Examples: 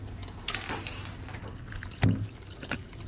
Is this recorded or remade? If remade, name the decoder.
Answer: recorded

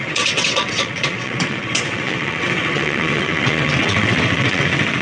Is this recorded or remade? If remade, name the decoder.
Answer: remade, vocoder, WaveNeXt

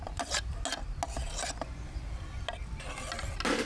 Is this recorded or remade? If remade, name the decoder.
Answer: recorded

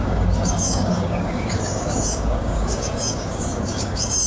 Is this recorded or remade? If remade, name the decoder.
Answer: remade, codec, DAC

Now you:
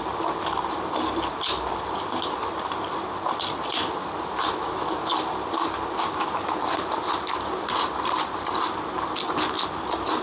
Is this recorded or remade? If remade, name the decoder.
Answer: recorded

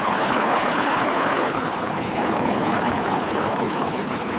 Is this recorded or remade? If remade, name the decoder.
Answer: remade, codec, HILCodec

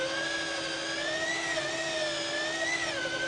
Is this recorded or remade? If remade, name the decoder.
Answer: recorded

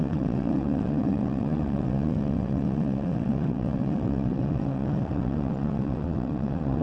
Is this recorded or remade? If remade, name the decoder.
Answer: remade, vocoder, WaveNeXt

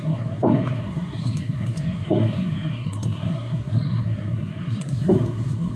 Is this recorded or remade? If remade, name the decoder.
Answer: remade, codec, SNAC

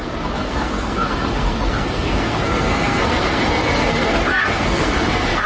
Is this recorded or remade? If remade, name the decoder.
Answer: remade, codec, SNAC